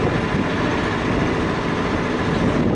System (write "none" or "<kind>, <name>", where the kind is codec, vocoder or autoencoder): none